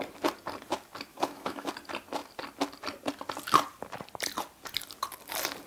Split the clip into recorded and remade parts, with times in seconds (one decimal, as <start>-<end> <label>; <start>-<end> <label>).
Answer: 0.0-1.1 recorded; 1.1-1.7 remade; 1.7-5.7 recorded